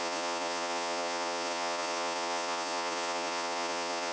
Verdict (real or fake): fake